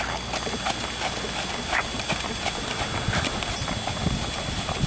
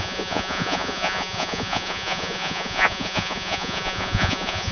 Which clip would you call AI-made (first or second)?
second